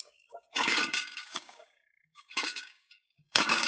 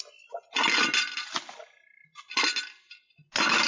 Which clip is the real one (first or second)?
second